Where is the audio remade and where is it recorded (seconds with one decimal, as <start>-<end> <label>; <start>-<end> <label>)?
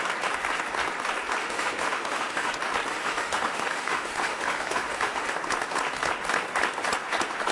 0.0-1.4 recorded; 1.4-2.5 remade; 2.5-2.9 recorded; 2.9-5.3 remade; 5.3-7.5 recorded